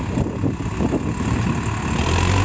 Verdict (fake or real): real